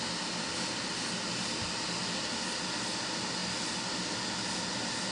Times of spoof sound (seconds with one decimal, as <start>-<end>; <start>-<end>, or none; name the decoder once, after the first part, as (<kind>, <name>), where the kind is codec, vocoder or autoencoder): none